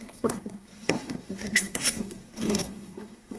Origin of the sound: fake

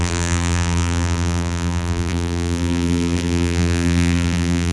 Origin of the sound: fake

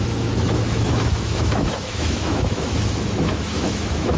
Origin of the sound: fake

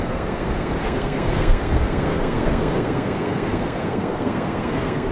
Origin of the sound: fake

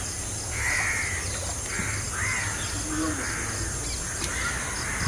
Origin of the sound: real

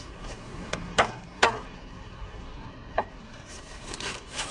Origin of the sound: fake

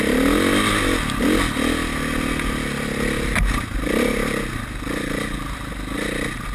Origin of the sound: real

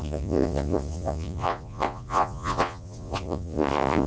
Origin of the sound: fake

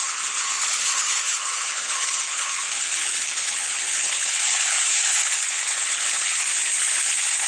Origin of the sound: fake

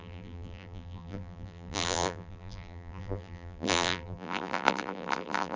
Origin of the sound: fake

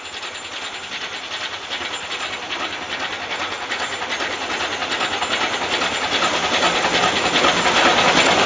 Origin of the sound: real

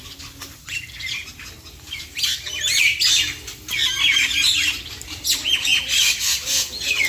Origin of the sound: real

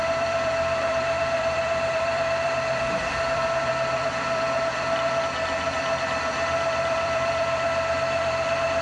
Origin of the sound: fake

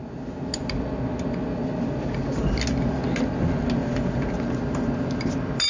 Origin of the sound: real